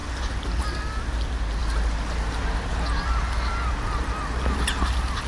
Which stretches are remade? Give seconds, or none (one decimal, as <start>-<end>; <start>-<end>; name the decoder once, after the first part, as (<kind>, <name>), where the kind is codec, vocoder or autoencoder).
none